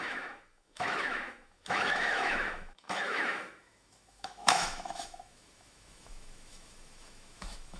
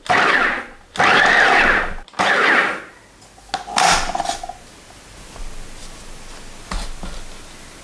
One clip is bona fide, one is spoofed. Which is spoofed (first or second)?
first